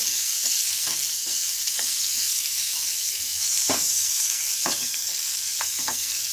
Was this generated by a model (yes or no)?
yes